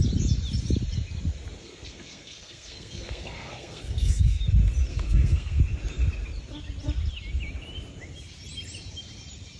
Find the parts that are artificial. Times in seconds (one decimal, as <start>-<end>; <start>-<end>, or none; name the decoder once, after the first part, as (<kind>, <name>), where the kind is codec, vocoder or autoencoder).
1.6-4.4 (codec, SNAC); 4.9-5.6